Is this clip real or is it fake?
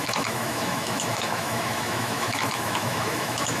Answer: fake